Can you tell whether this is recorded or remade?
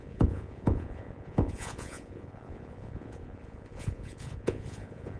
remade